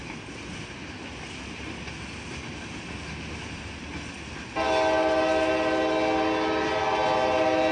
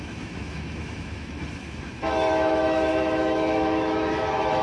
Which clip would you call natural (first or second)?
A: first